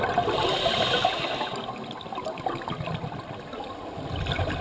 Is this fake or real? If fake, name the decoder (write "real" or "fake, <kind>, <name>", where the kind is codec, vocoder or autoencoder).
real